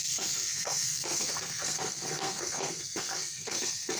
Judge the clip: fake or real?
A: fake